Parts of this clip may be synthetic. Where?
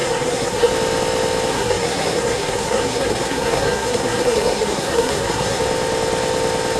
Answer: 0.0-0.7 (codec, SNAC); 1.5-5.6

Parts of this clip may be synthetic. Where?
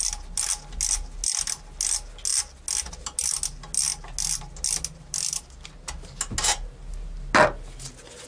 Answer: none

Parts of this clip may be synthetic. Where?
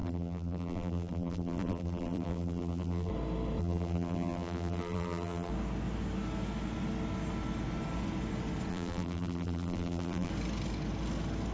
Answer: 0.0-3.1 (vocoder, BigVGAN v2); 3.6-5.5; 8.7-10.3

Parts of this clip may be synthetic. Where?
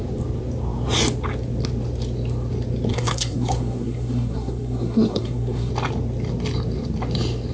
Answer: 2.9-5.7 (codec, SNAC)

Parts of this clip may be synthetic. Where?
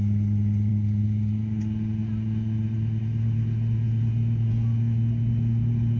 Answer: none